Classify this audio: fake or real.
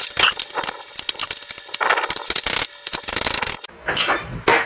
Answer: real